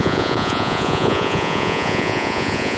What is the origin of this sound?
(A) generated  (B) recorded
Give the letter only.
A